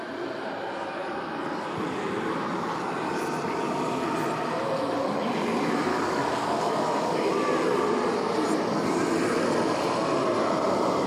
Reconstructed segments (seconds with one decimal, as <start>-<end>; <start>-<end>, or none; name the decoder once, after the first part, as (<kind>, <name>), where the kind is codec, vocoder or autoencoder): 5.9-7.3 (codec, DAC)